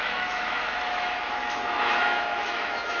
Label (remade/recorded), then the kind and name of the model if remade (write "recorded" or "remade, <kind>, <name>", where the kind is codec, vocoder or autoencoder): remade, autoencoder, DAC-VAE